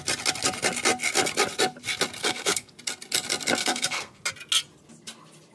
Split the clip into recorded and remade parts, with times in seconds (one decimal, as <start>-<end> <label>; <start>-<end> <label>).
0.0-2.2 recorded; 2.2-2.7 remade; 2.7-3.6 recorded; 3.6-4.2 remade; 4.2-5.5 recorded